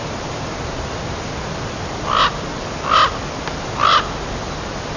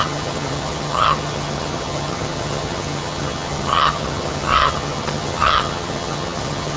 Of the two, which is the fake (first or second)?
second